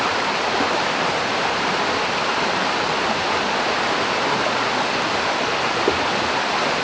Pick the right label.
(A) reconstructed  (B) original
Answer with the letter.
B